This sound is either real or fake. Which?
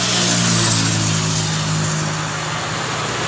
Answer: real